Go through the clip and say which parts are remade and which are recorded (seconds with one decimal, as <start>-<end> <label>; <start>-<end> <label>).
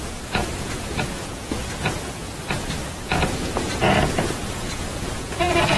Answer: 0.0-5.8 remade